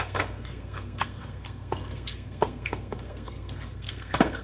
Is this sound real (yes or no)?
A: no